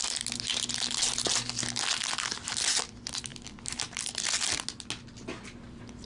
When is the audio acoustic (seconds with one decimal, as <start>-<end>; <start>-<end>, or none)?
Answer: 0.0-6.0